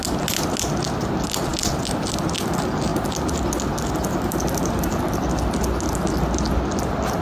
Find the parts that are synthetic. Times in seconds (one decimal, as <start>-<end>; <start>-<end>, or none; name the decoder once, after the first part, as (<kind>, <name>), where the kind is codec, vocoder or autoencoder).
none